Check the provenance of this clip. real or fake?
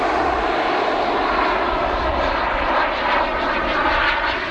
real